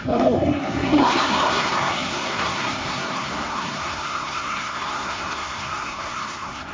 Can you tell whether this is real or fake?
fake